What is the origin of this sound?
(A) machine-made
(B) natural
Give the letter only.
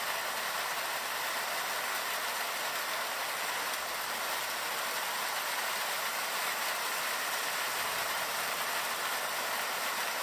B